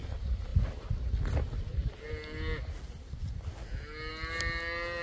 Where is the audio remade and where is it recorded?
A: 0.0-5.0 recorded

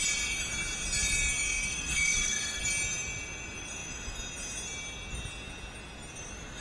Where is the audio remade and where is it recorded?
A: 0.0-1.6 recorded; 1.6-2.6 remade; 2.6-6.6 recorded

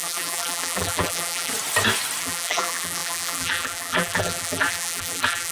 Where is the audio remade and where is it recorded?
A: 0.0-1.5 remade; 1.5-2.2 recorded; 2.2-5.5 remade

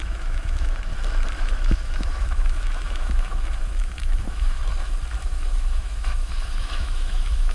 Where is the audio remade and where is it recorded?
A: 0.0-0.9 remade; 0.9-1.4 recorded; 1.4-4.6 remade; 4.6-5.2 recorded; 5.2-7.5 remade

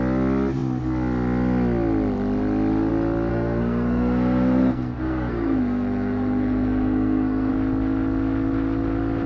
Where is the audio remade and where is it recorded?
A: 0.0-3.3 recorded; 3.3-7.5 remade; 7.5-9.3 recorded

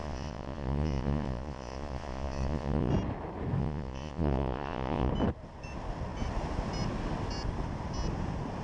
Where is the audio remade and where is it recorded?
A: 0.0-2.9 remade; 2.9-3.6 recorded; 3.6-5.1 remade; 5.1-8.6 recorded